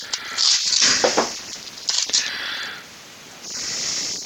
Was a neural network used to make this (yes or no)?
no